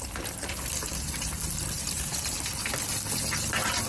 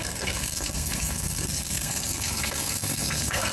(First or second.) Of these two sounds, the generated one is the second